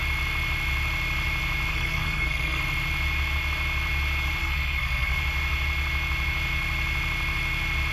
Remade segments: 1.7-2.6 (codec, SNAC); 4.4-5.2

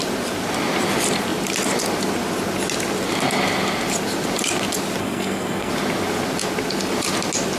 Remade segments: 5.0-5.7 (codec, SNAC)